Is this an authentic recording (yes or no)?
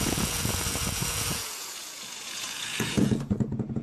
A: no